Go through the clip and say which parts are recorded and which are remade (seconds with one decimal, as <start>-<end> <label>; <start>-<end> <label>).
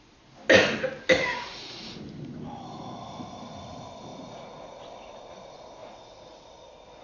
0.0-1.5 recorded; 1.5-2.0 remade; 2.0-4.1 recorded; 4.1-4.8 remade; 4.8-5.8 recorded; 5.8-6.5 remade; 6.5-7.0 recorded